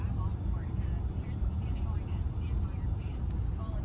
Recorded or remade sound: recorded